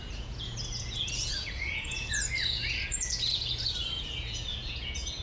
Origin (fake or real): fake